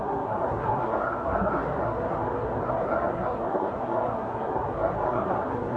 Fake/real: fake